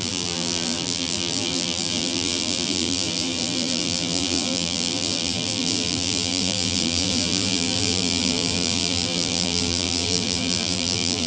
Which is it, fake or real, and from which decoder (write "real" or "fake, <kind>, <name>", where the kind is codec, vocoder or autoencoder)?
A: fake, vocoder, BigVGAN v2